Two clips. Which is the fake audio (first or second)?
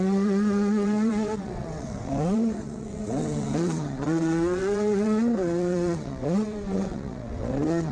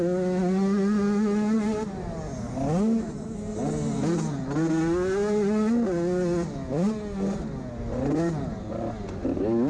first